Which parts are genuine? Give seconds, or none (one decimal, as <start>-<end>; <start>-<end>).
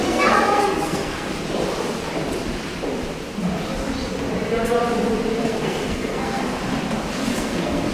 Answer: 1.3-5.4; 6.4-7.2